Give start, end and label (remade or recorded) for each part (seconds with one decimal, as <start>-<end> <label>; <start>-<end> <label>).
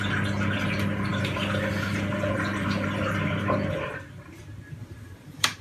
0.0-4.8 recorded; 4.8-5.6 remade